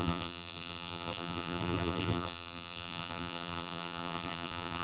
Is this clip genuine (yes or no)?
no